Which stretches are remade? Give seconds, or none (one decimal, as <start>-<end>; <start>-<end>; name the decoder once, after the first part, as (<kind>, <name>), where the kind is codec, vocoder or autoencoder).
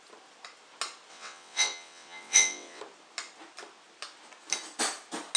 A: 1.1-2.8 (vocoder, WaveNeXt)